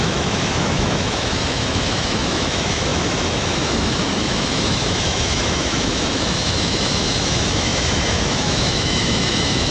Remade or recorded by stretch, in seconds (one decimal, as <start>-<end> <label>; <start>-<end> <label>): 0.0-9.7 remade